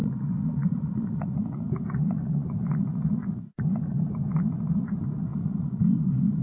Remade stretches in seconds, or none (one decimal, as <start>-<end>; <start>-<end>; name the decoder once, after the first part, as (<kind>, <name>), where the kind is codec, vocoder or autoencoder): 0.0-3.5 (vocoder, Vocos); 5.3-6.4